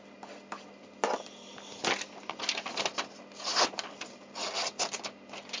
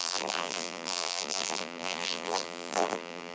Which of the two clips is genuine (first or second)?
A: first